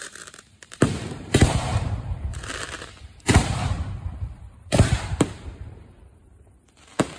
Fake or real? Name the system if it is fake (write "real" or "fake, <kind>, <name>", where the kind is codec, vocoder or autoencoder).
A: fake, vocoder, BigVGAN v2